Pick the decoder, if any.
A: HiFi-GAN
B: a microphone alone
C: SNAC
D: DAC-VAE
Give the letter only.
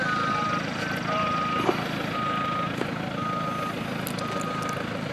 B